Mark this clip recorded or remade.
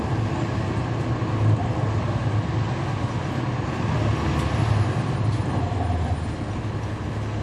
recorded